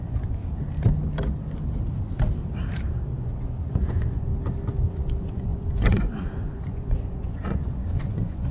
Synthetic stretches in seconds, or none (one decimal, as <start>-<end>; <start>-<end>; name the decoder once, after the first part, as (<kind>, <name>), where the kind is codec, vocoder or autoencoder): 0.0-0.4 (vocoder, Vocos); 3.2-4.3; 4.9-8.5

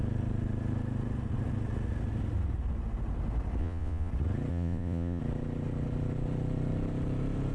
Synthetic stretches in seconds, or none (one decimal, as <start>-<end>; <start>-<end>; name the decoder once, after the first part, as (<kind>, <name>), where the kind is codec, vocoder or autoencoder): 3.6-4.1 (vocoder, Vocos); 4.5-5.2

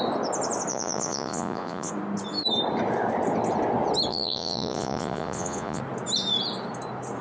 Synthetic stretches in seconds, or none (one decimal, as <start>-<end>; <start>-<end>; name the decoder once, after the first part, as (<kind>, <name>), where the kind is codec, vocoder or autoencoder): 0.7-1.9 (vocoder, Vocos); 4.1-5.8

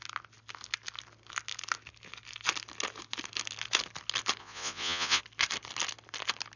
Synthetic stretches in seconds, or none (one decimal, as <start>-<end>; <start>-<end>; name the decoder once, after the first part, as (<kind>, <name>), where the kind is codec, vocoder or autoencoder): 4.4-5.2 (vocoder, Vocos)

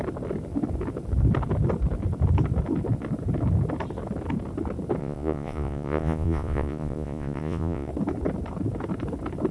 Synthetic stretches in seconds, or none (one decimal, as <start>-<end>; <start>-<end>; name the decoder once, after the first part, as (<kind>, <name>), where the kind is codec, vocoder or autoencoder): 5.0-7.9 (vocoder, Vocos)

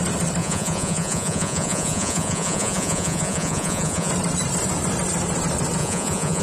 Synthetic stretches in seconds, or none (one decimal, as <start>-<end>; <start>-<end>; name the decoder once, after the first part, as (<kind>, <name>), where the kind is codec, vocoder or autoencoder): 0.4-4.1 (vocoder, Vocos); 5.8-6.4

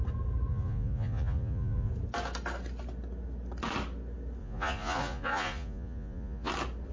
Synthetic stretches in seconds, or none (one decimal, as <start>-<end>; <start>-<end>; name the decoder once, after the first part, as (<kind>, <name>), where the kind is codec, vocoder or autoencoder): 0.5-1.9 (vocoder, Vocos); 4.4-6.5